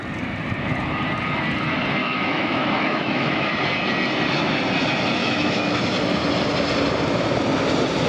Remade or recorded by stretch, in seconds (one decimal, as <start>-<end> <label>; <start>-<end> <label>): 0.0-2.0 recorded; 2.0-3.5 remade; 3.5-5.2 recorded; 5.2-5.8 remade; 5.8-8.1 recorded